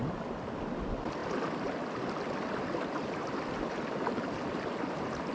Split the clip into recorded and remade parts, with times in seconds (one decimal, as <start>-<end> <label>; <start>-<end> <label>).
0.0-5.3 recorded